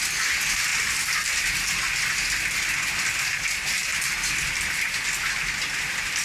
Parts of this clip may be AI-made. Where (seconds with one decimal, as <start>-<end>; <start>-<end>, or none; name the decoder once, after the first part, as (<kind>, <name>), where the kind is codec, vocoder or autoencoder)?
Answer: none